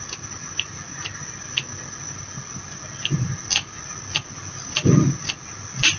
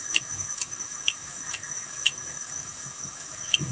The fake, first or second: second